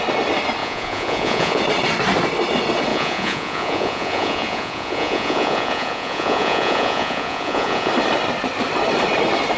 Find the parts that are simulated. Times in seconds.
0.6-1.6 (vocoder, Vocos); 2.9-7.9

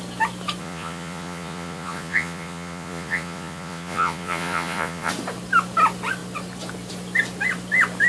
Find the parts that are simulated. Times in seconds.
0.6-5.1 (vocoder, Vocos)

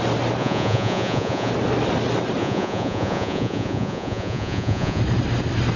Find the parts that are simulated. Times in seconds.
0.4-1.5 (vocoder, Vocos); 2.4-5.0